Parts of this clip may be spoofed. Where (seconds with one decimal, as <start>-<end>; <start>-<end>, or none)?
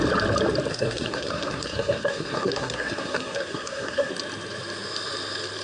0.7-4.1